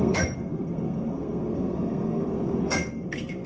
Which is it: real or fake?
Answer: fake